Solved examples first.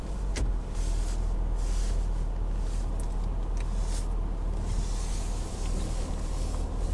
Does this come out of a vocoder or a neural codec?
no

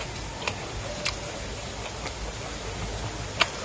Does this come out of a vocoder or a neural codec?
no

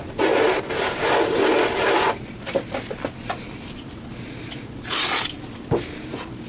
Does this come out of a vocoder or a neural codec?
no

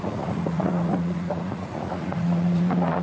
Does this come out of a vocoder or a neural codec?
yes